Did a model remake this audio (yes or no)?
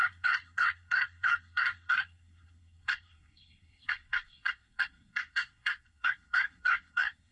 yes